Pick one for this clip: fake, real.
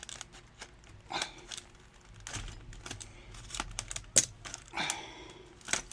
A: real